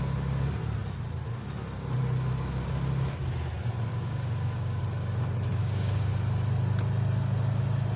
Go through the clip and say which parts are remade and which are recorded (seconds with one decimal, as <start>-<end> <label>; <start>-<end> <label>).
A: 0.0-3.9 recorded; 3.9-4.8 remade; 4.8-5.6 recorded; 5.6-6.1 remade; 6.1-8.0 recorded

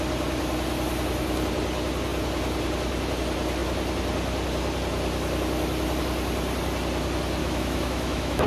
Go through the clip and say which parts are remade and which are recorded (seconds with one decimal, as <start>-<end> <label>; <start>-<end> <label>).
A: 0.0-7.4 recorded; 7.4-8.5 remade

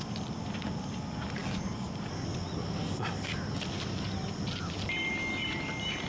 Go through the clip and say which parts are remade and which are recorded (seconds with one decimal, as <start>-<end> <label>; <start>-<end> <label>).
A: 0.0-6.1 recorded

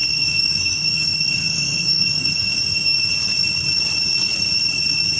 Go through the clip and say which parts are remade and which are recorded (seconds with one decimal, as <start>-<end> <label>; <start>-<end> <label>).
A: 0.0-3.1 remade; 3.1-5.2 recorded

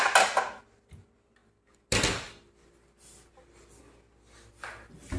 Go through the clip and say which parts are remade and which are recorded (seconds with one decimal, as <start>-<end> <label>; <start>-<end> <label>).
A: 0.0-5.2 recorded

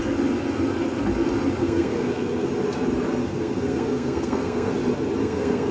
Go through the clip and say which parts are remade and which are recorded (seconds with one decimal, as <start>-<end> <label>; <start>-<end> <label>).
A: 0.0-1.6 recorded; 1.6-2.5 remade; 2.5-3.2 recorded; 3.2-4.7 remade; 4.7-5.2 recorded; 5.2-5.7 remade